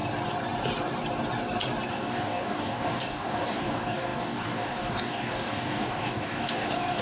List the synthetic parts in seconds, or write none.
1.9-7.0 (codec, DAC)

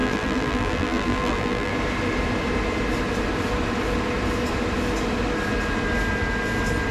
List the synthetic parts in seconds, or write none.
0.0-1.7 (vocoder, BigVGAN v2)

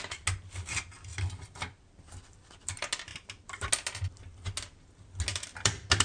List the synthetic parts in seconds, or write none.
1.1-2.5 (vocoder, BigVGAN v2); 3.1-3.7; 5.3-6.0

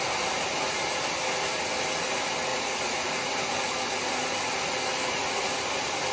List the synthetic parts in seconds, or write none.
2.5-3.3 (vocoder, Vocos); 4.9-5.5

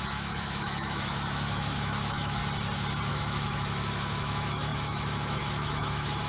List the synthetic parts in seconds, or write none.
0.0-2.4 (autoencoder, DAC-VAE); 3.1-6.3